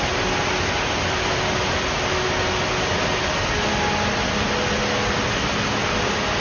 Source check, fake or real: real